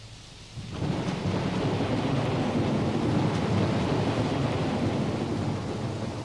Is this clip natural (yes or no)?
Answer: yes